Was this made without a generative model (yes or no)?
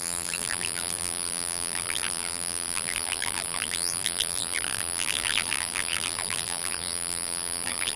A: no